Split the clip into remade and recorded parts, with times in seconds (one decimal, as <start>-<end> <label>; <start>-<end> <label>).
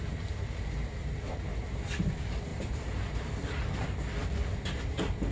0.0-1.0 recorded; 1.0-1.5 remade; 1.5-2.5 recorded; 2.5-3.4 remade; 3.4-5.3 recorded